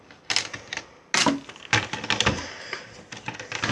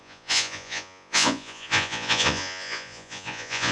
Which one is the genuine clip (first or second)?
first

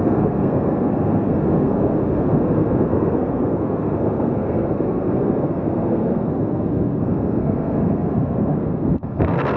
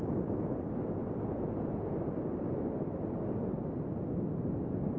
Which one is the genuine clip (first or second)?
second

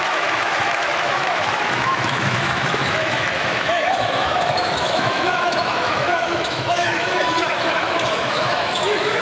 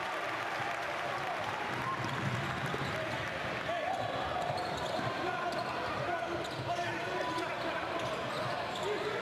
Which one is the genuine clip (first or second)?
second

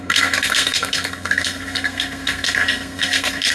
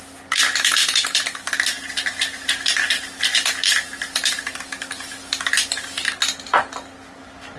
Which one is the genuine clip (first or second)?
second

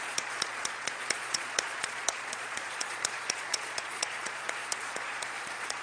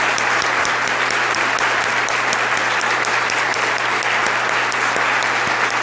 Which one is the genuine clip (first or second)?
second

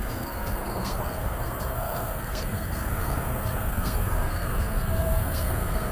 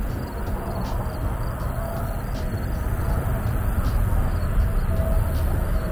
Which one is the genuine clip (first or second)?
second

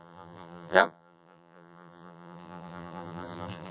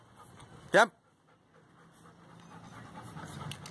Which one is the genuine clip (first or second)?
second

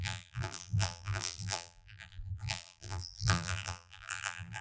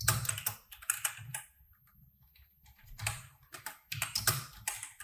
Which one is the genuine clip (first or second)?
second